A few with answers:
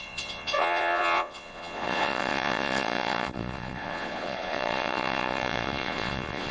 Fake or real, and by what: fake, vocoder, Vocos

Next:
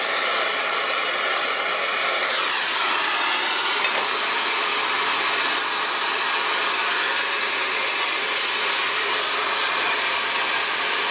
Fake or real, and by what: real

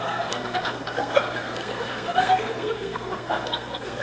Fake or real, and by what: fake, codec, SNAC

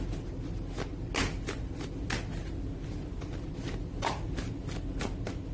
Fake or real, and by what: real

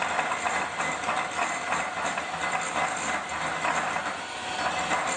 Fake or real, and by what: real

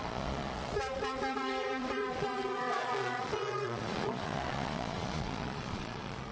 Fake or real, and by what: fake, vocoder, Vocos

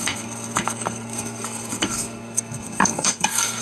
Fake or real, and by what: fake, codec, SNAC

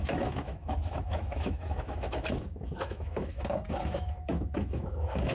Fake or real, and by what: fake, autoencoder, DAC-VAE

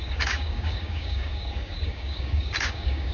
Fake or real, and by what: fake, codec, DAC